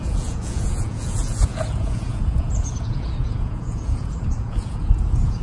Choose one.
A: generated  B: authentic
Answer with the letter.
A